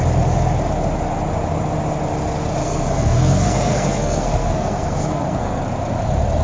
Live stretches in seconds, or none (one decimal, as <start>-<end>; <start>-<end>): 0.0-2.6; 5.6-6.4